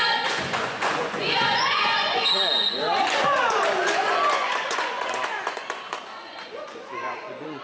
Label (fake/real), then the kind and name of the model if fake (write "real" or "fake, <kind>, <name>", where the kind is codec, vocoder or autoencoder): fake, vocoder, Vocos